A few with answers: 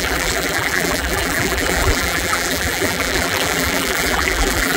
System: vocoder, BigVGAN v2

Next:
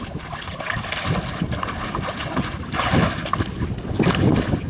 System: none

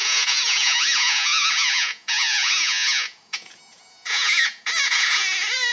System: vocoder, Vocos